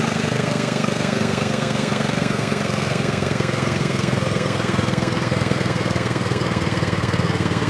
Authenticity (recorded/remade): remade